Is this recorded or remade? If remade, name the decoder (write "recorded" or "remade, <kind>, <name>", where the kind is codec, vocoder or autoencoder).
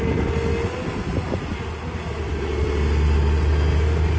recorded